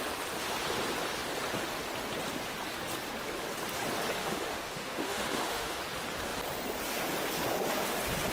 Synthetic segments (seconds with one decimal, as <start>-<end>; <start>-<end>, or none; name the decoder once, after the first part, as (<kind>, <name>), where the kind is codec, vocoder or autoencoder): 4.2-5.8 (autoencoder, DAC-VAE)

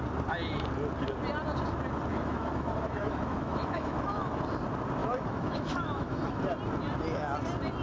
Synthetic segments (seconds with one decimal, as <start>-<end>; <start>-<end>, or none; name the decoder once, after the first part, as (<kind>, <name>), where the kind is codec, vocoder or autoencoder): 2.1-4.4 (autoencoder, DAC-VAE); 5.0-6.4

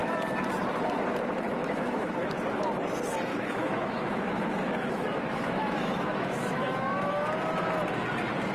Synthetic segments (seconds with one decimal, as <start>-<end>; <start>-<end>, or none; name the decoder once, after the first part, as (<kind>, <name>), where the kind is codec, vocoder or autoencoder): 1.6-2.1 (autoencoder, DAC-VAE); 3.3-7.1